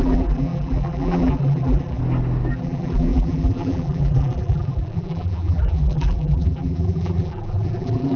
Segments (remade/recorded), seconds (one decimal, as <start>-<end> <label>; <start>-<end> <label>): 0.0-2.0 remade; 2.0-2.5 recorded; 2.5-8.2 remade